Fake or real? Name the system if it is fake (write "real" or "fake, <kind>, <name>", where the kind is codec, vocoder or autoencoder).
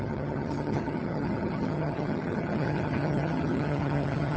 fake, vocoder, HiFi-GAN